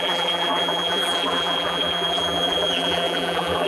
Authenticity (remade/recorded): remade